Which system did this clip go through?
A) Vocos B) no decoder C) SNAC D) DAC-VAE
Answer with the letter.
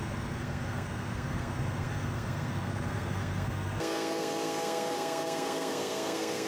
C